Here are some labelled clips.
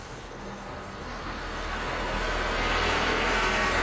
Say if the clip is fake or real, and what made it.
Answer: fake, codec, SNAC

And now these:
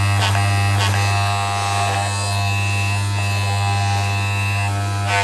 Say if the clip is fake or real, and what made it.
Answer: real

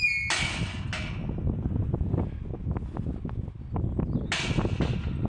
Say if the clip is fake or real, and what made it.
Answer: real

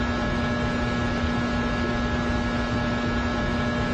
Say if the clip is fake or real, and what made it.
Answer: real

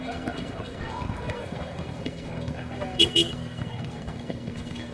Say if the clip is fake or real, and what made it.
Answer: fake, codec, SNAC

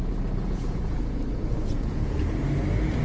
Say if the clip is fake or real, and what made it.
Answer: fake, vocoder, Vocos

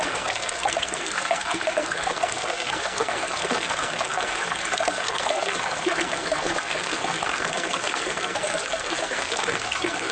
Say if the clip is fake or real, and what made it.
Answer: fake, codec, SNAC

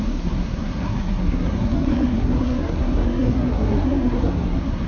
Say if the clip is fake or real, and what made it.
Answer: fake, codec, SNAC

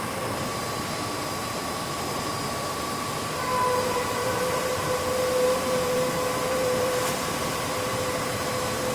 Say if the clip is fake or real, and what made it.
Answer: fake, vocoder, BigVGAN v2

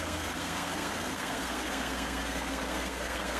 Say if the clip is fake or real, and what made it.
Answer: fake, codec, SNAC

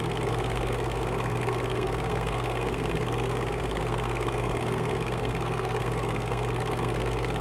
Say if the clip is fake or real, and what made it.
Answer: fake, codec, SNAC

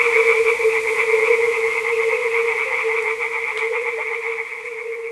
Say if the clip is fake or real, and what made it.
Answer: real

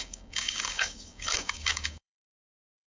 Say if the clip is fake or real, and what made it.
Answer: fake, codec, DAC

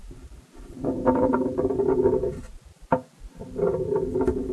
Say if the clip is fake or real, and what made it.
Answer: real